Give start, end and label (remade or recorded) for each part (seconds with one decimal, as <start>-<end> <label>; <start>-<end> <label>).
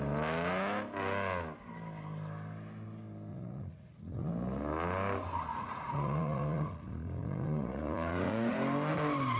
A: 0.0-3.3 recorded; 3.3-4.3 remade; 4.3-5.5 recorded; 5.5-8.5 remade; 8.5-9.4 recorded